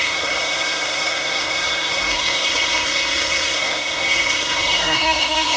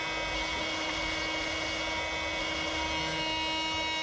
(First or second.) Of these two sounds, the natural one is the second